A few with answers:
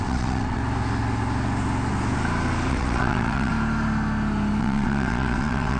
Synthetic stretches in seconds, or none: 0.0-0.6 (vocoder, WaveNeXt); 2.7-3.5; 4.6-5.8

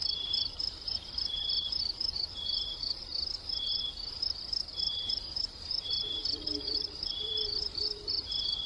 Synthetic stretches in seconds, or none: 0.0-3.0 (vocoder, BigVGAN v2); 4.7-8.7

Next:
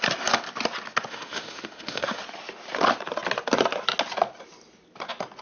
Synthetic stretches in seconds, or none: 1.1-2.2 (autoencoder, DAC-VAE)

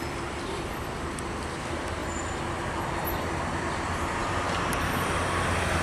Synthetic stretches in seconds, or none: none